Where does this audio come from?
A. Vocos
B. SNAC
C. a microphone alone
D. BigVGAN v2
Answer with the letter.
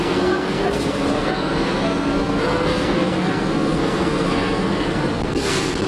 B